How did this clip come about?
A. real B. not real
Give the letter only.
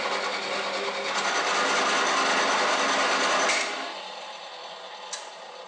A